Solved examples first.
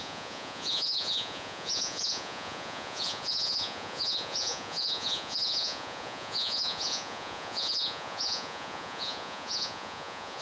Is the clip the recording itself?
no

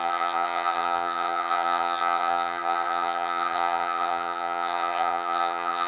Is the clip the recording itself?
no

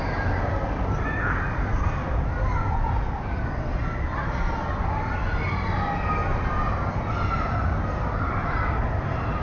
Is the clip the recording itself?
yes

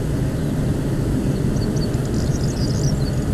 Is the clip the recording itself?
yes